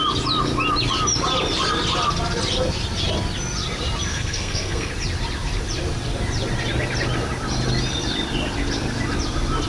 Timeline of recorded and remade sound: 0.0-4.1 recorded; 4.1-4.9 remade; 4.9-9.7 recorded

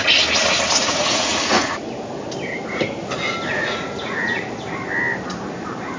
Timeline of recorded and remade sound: 0.0-0.8 recorded; 0.8-1.8 remade; 1.8-3.5 recorded; 3.5-4.4 remade; 4.4-6.0 recorded

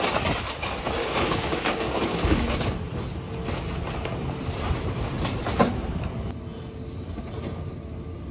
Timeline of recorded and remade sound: 0.0-1.0 recorded; 1.0-2.5 remade; 2.5-8.3 recorded

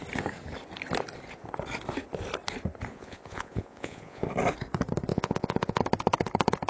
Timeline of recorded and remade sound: 0.0-2.9 recorded; 2.9-4.2 remade; 4.2-5.1 recorded; 5.1-5.8 remade; 5.8-6.7 recorded

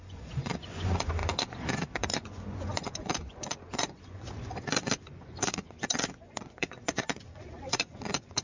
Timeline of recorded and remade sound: 0.0-8.4 remade

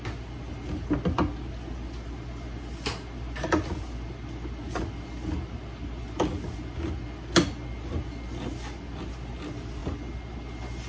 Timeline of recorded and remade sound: 0.0-10.9 recorded